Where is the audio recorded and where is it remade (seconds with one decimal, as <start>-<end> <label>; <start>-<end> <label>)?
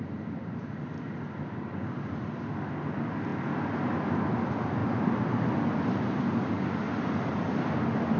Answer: 0.0-8.2 recorded